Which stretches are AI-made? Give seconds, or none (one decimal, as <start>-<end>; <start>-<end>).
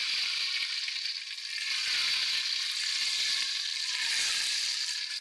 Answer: 3.1-5.2